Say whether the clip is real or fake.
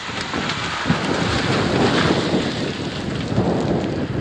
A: real